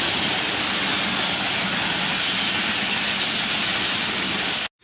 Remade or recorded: recorded